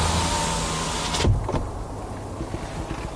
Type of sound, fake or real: real